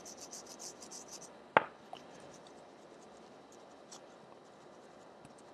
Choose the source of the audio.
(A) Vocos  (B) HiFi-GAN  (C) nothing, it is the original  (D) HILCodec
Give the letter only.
C